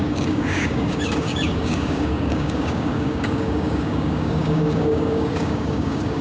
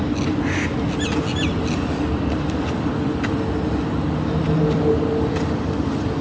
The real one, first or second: second